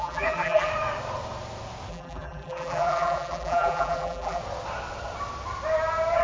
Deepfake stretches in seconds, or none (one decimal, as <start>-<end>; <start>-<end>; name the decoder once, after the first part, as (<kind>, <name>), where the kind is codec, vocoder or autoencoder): 0.0-0.7 (vocoder, BigVGAN v2); 1.9-4.4